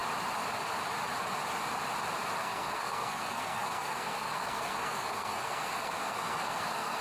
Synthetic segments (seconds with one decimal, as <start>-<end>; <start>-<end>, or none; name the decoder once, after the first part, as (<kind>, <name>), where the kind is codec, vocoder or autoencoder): 2.4-7.0 (codec, SNAC)